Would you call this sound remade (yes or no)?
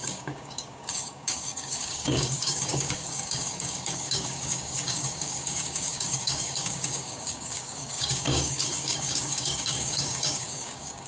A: yes